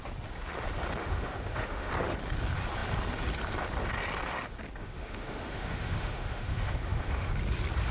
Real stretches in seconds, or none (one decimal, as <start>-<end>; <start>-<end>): 0.0-1.0; 1.9-4.8; 7.3-7.9